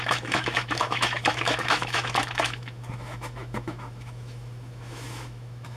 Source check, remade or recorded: remade